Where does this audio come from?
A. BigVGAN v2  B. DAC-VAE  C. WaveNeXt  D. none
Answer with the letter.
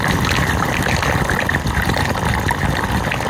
D